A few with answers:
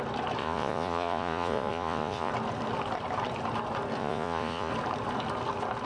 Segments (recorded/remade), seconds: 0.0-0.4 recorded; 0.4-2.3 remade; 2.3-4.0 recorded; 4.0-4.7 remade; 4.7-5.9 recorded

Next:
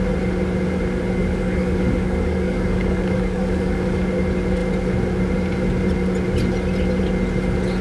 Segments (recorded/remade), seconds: 0.0-1.2 recorded; 1.2-4.0 remade; 4.0-7.8 recorded

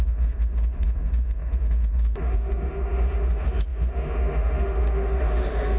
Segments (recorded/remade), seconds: 0.0-5.8 remade

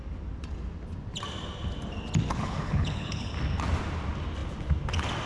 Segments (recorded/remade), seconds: 0.0-2.3 recorded; 2.3-3.3 remade; 3.3-5.3 recorded

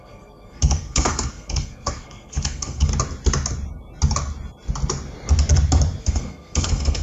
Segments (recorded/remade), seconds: 0.0-2.9 remade; 2.9-6.0 recorded; 6.0-7.0 remade

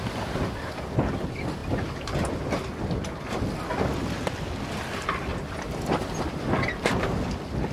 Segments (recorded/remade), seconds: 0.0-7.7 recorded